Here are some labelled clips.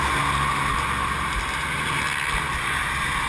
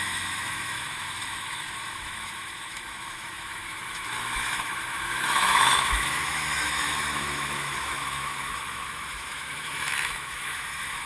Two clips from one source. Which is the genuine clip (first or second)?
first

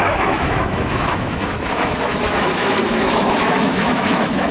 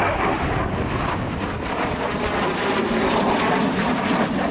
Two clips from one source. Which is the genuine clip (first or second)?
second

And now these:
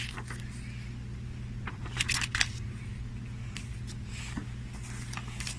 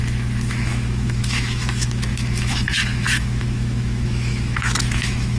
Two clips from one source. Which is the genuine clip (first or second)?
first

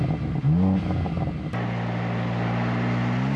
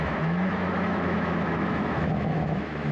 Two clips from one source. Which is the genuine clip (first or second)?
first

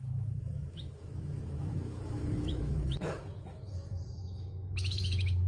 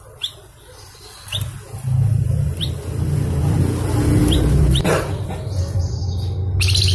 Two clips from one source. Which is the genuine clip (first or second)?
second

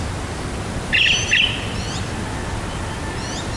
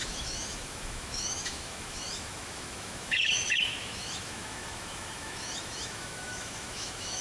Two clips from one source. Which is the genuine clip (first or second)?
first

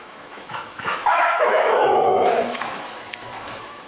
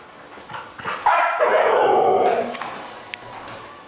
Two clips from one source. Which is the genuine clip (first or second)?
second